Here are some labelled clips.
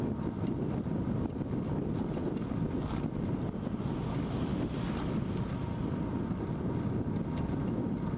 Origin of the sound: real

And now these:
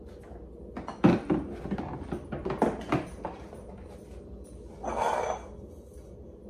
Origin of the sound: real